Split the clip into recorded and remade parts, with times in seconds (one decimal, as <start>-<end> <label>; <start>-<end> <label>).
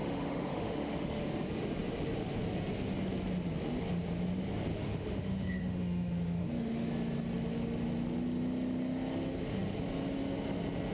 0.0-1.2 remade; 1.2-4.7 recorded; 4.7-6.9 remade; 6.9-10.9 recorded